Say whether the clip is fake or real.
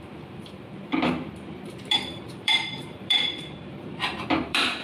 fake